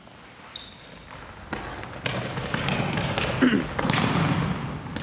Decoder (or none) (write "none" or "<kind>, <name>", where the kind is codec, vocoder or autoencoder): none